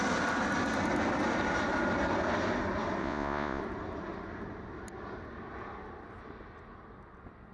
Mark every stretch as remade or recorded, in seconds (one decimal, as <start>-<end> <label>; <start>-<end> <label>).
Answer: 0.0-3.0 recorded; 3.0-3.6 remade; 3.6-7.5 recorded